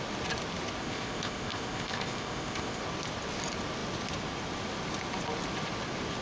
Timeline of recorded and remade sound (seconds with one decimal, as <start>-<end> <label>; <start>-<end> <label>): 0.0-0.8 recorded; 0.8-2.8 remade; 2.8-6.2 recorded